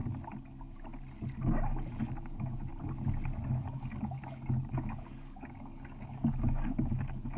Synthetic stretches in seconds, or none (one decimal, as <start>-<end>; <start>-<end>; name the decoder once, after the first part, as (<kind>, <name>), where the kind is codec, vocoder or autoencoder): 2.0-2.7 (codec, DAC); 3.5-7.4